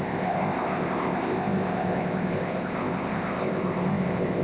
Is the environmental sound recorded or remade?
remade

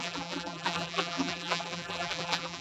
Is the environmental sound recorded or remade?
remade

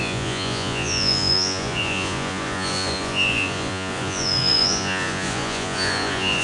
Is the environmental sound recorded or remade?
remade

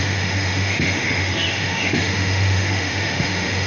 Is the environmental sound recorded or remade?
remade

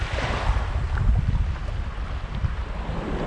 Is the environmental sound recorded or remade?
recorded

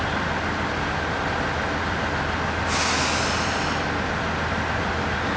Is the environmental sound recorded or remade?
recorded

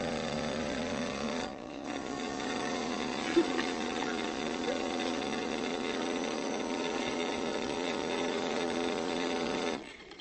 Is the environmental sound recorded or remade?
remade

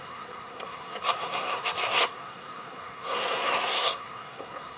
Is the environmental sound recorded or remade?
remade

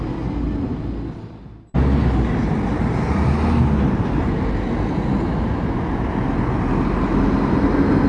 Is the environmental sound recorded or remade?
recorded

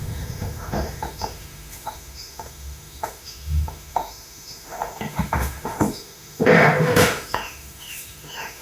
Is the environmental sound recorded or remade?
remade